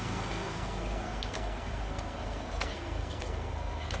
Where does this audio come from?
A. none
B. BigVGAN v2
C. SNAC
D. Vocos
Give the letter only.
C